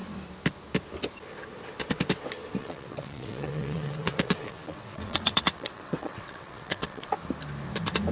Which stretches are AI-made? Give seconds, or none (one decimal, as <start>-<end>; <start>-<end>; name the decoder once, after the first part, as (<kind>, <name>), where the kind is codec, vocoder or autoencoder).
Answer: 2.6-7.1 (vocoder, WaveNeXt)